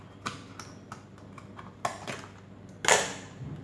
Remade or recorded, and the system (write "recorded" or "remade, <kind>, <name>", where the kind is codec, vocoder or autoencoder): recorded